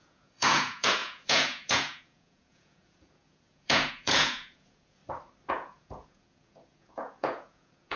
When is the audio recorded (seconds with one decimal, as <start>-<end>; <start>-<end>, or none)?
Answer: 5.0-5.5